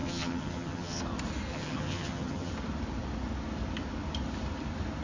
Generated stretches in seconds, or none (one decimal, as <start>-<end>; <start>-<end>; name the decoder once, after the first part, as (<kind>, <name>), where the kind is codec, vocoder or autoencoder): 0.0-1.0 (vocoder, HiFi-GAN); 1.5-2.5